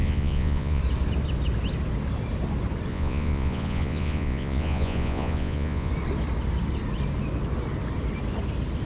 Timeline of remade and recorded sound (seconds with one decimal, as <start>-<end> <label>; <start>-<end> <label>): 0.0-0.8 remade; 0.8-2.9 recorded; 2.9-5.9 remade; 5.9-8.8 recorded